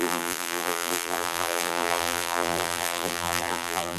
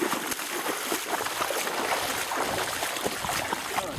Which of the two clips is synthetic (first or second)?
first